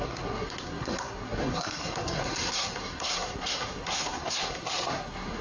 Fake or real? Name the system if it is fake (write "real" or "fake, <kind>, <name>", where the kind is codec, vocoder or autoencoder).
fake, codec, SNAC